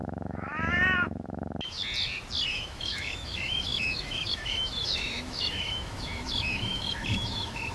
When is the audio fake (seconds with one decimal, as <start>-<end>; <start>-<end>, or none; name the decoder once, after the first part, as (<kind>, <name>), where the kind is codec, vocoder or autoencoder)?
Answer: 0.0-1.8 (autoencoder, DAC-VAE); 2.5-7.7